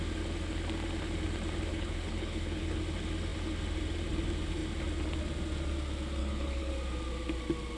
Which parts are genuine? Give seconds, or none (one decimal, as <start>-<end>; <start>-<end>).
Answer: 0.0-1.7; 2.8-6.2; 6.7-7.8